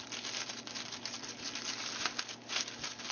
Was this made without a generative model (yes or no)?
yes